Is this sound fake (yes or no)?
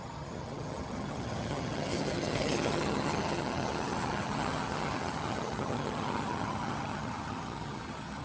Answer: yes